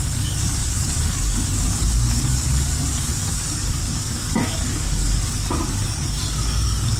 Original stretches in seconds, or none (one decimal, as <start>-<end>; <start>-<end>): none